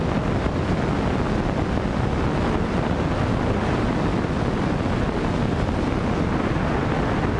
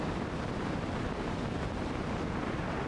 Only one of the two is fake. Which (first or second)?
second